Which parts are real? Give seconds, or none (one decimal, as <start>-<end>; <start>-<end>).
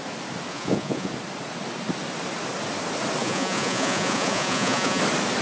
0.0-0.5; 1.1-3.2; 5.0-5.4